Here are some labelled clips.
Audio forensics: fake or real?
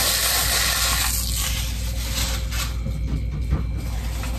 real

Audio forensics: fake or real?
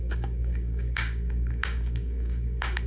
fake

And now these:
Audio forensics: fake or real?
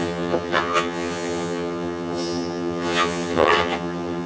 fake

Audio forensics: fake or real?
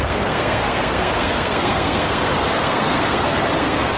fake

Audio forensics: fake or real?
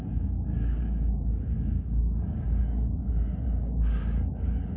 fake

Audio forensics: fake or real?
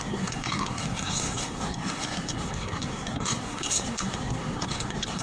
fake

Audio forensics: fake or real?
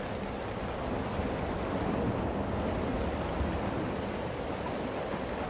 real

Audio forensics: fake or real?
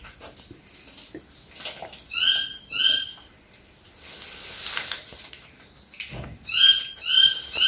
real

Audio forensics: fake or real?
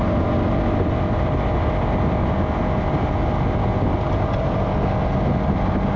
real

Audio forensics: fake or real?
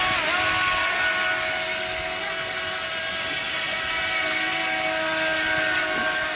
real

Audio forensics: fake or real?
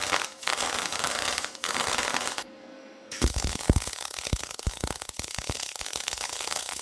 fake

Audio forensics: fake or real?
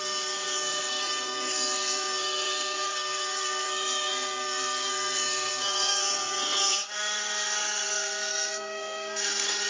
fake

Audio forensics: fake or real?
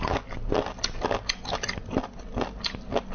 real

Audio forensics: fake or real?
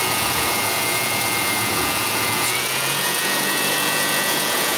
fake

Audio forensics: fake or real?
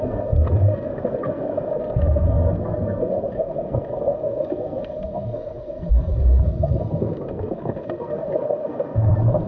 fake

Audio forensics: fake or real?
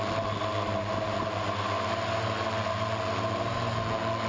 real